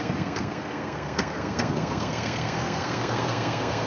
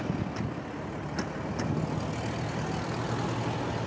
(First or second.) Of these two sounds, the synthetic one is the first